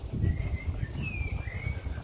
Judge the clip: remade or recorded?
recorded